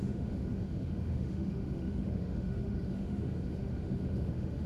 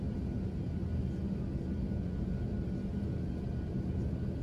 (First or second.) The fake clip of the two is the first